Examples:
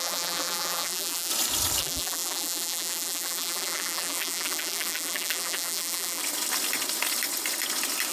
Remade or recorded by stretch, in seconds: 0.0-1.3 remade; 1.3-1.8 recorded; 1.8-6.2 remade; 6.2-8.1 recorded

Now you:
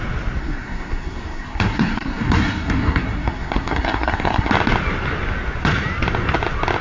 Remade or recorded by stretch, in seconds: 0.0-0.4 recorded; 0.4-4.5 remade; 4.5-6.8 recorded

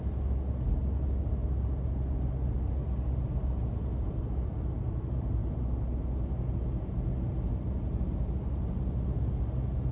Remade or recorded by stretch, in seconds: 0.0-9.9 recorded